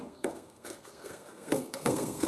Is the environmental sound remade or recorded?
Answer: remade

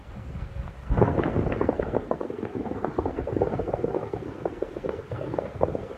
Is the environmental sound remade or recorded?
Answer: remade